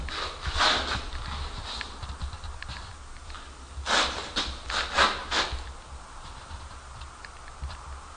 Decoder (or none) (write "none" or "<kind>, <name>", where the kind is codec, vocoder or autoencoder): none